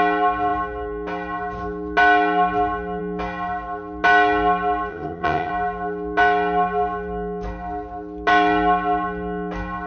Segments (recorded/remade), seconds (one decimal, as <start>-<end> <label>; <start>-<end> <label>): 0.0-4.9 recorded; 4.9-5.5 remade; 5.5-9.9 recorded